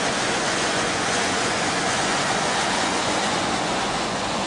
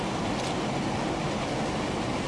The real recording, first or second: second